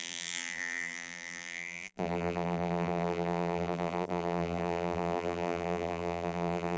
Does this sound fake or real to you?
fake